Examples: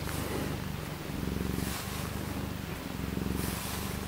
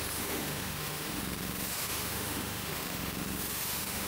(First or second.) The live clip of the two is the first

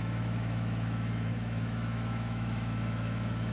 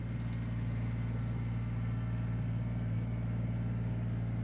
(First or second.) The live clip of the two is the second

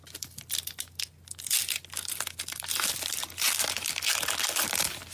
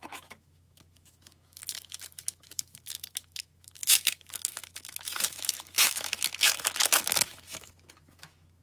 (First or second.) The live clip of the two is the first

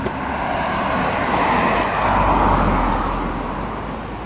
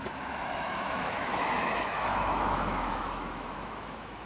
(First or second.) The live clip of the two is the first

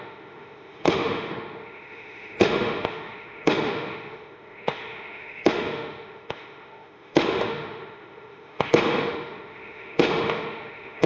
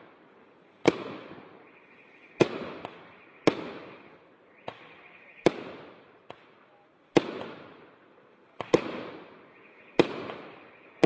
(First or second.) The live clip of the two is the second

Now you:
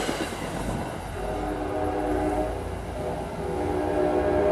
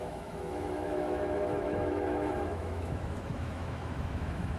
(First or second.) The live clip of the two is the first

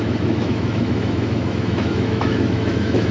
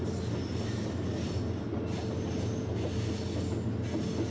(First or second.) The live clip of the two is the second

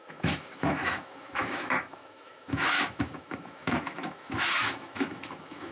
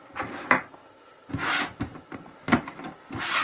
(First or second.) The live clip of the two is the second